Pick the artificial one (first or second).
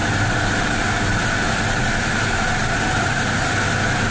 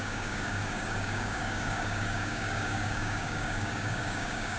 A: second